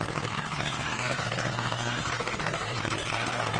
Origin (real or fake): fake